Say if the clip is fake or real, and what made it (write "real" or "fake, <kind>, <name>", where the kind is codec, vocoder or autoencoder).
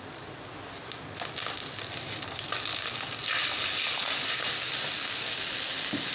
real